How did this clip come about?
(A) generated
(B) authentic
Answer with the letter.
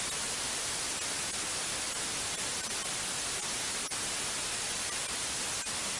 B